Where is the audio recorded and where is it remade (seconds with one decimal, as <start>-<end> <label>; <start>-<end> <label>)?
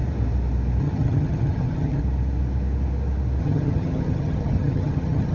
0.0-0.8 recorded; 0.8-2.0 remade; 2.0-3.4 recorded; 3.4-5.3 remade